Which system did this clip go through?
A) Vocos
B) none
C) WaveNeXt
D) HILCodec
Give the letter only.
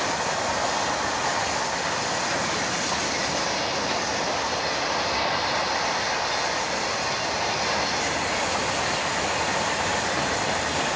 B